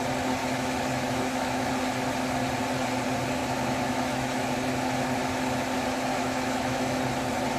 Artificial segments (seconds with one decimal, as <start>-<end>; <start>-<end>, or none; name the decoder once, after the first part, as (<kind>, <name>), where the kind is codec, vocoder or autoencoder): 0.4-1.7 (autoencoder, DAC-VAE); 3.4-4.5; 6.1-7.0